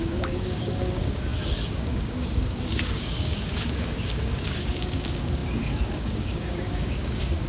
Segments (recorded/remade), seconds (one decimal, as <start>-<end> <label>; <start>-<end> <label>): 0.0-7.5 remade